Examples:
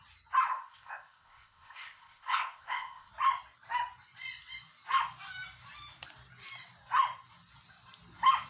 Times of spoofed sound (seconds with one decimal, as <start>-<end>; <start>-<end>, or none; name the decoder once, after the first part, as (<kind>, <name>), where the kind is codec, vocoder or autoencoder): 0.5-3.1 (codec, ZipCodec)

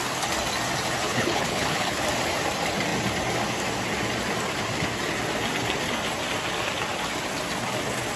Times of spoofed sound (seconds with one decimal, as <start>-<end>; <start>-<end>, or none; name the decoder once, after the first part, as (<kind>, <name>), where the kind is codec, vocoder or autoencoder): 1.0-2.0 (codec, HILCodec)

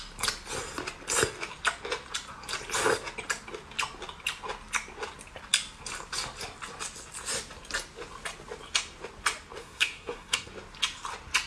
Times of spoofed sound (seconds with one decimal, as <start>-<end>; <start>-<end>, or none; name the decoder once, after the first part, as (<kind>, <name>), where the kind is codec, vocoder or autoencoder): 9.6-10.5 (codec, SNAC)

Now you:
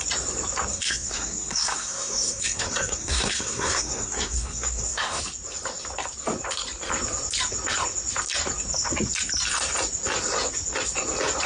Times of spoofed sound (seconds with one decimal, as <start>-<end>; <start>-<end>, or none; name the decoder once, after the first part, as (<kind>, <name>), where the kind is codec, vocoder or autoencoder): 0.7-5.2 (codec, SNAC)

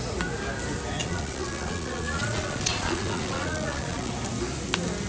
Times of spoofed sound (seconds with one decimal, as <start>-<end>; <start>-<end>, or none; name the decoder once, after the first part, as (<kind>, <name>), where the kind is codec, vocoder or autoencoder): 1.0-4.1 (vocoder, Vocos)